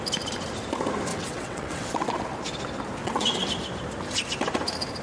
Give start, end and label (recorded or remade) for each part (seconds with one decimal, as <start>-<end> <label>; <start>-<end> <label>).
0.0-1.1 recorded; 1.1-2.2 remade; 2.2-3.0 recorded; 3.0-3.5 remade; 3.5-5.0 recorded